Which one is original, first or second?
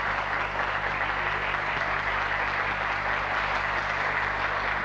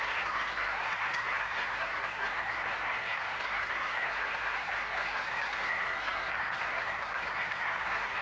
first